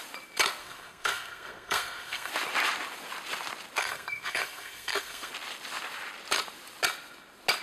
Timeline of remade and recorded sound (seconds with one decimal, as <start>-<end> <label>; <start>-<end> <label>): 0.0-0.6 recorded; 0.6-2.3 remade; 2.3-3.8 recorded; 3.8-5.3 remade; 5.3-7.6 recorded